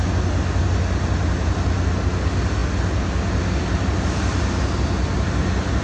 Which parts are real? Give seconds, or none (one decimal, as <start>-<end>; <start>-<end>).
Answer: 0.0-5.8